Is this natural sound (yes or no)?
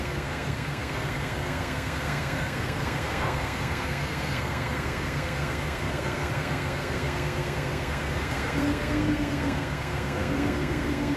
no